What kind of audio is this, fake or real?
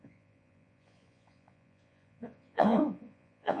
fake